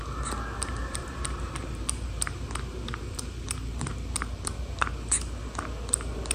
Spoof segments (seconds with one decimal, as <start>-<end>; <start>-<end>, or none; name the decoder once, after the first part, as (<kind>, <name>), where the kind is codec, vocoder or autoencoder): 0.8-3.9 (vocoder, BigVGAN v2)